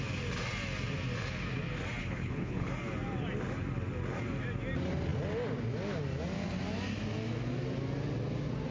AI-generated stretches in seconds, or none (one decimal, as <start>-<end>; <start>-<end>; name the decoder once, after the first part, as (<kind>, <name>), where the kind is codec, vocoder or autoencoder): 2.0-2.7 (codec, HILCodec)